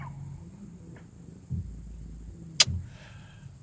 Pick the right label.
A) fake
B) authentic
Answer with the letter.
B